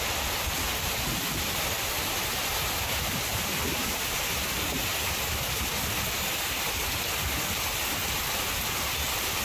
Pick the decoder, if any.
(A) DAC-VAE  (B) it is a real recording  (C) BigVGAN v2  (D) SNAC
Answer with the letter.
B